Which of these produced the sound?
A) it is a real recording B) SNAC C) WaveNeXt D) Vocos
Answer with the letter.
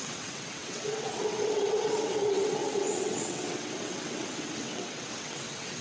C